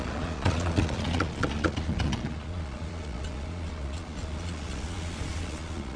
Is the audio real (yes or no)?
no